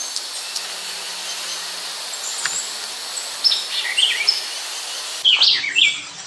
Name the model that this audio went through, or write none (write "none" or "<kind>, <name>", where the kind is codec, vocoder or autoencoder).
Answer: none